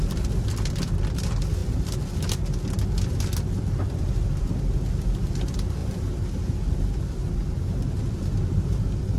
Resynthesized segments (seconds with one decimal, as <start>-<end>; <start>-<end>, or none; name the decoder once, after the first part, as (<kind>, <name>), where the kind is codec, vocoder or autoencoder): none